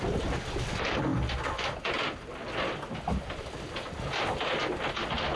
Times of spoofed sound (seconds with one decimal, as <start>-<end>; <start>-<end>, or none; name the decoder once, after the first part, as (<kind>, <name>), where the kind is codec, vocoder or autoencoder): none

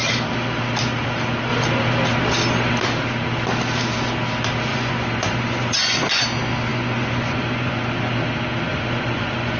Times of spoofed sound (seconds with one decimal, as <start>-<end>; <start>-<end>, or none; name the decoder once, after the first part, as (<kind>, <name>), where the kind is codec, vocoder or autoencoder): 4.7-6.2 (vocoder, Vocos); 6.7-8.2; 8.7-9.6

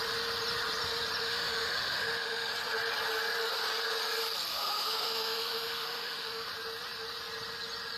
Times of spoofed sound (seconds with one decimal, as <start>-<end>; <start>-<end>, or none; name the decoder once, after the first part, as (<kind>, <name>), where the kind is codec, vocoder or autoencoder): 1.2-2.5 (autoencoder, DAC-VAE); 4.5-6.5

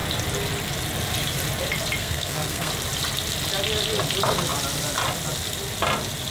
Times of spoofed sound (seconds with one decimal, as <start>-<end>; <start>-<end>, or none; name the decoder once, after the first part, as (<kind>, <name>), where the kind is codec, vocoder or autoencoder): 2.0-2.7 (codec, SNAC)

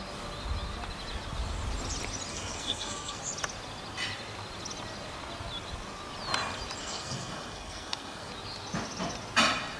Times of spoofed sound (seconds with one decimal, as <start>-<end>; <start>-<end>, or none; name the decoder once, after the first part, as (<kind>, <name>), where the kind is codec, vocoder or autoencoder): 2.3-3.2 (codec, SNAC); 6.8-8.3